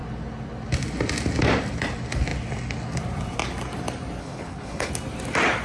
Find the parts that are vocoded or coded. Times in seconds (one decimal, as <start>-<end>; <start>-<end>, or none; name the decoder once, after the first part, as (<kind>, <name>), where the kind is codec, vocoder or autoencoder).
4.2-4.9 (codec, HILCodec)